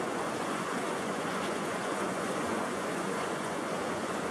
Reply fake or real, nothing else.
fake